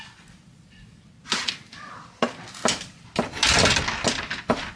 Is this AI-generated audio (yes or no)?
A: no